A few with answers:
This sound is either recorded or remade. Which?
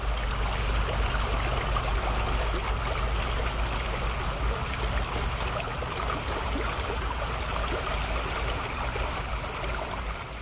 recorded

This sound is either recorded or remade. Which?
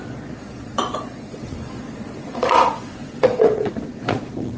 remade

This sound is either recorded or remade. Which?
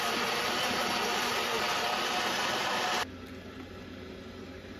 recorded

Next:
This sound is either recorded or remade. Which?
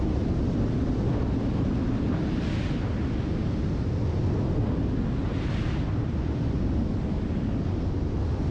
recorded